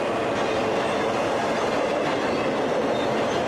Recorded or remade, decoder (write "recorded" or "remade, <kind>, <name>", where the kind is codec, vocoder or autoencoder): recorded